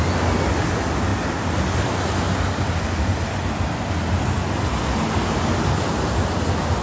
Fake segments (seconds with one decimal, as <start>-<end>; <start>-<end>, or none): none

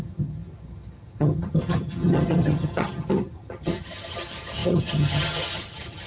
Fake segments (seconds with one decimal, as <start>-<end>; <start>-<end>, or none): 0.0-6.1